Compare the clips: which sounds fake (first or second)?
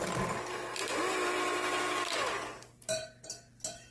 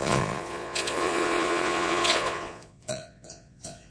second